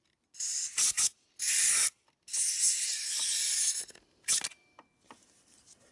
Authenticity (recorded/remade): recorded